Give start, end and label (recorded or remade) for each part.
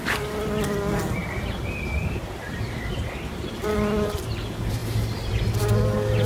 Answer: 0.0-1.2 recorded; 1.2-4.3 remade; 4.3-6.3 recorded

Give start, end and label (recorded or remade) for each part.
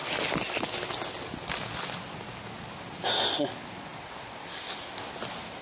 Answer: 0.0-3.9 recorded; 3.9-4.9 remade; 4.9-5.6 recorded